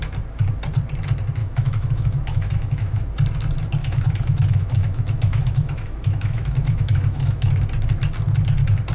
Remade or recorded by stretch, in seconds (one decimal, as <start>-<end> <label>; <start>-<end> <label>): 0.0-1.4 recorded; 1.4-3.0 remade; 3.0-3.8 recorded; 3.8-7.5 remade; 7.5-8.9 recorded